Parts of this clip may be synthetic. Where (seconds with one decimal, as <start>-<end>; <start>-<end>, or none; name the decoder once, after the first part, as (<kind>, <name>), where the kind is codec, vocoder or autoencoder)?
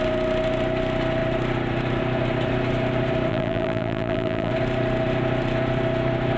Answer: 3.3-4.5 (vocoder, BigVGAN v2)